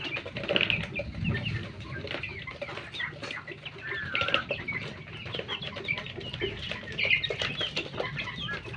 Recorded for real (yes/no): yes